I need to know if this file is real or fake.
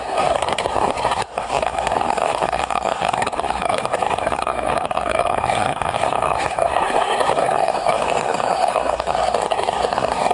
fake